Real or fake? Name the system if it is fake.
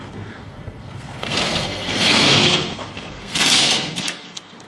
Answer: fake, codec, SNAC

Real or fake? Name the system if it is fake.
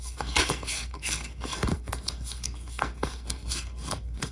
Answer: fake, codec, SNAC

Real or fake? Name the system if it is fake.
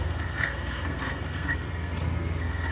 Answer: fake, codec, SNAC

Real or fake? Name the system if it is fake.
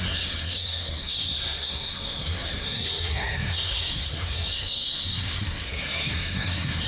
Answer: fake, codec, SNAC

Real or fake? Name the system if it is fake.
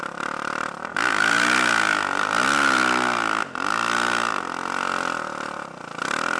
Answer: real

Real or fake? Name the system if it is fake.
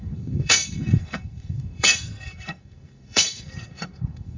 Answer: fake, codec, SNAC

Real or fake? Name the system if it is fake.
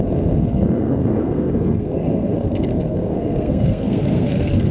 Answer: fake, codec, SNAC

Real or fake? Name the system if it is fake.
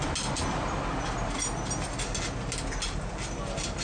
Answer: real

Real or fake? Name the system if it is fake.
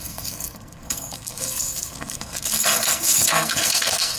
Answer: fake, codec, SNAC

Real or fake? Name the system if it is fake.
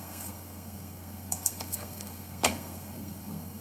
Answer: fake, codec, SNAC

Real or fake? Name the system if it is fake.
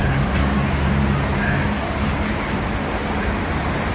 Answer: real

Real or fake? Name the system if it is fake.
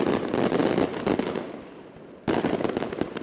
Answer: real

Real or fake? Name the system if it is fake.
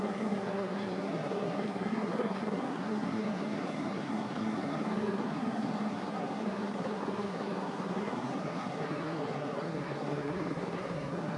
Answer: fake, codec, SNAC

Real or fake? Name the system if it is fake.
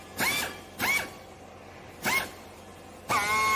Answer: real